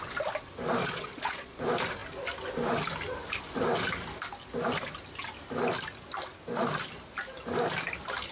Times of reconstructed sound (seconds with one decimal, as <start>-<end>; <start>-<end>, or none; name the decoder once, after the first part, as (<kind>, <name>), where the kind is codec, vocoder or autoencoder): 0.8-1.6 (vocoder, Vocos)